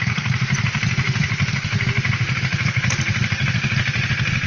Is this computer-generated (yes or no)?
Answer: yes